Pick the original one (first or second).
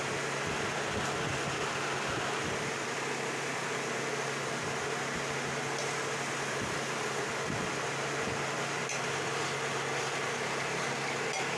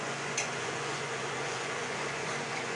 first